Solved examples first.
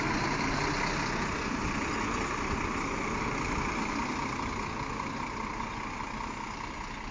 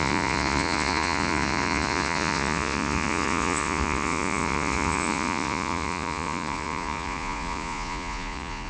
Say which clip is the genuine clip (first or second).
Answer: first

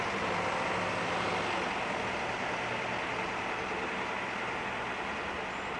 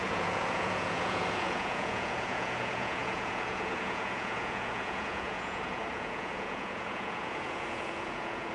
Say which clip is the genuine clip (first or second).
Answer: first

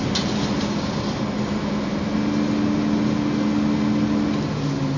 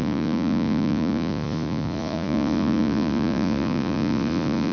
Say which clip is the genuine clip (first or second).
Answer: first